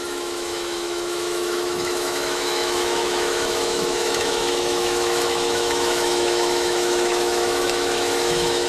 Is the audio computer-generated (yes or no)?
yes